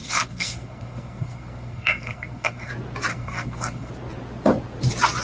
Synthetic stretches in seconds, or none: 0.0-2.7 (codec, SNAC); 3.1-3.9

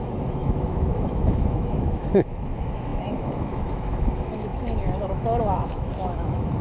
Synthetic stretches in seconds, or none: 0.0-6.6 (autoencoder, DAC-VAE)

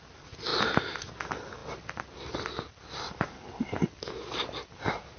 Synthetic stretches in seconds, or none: none

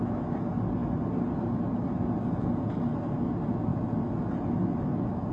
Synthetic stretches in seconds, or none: none

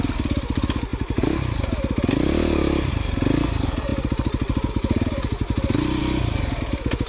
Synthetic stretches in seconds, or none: none

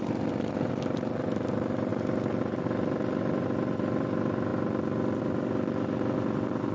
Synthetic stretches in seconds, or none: 0.0-1.9 (vocoder, BigVGAN v2); 2.4-6.7

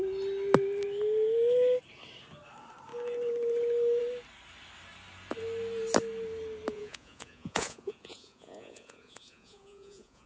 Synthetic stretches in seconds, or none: 6.7-10.3 (vocoder, Vocos)